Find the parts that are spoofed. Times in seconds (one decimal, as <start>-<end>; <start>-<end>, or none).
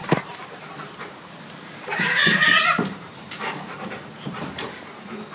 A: 0.0-0.7; 1.9-4.8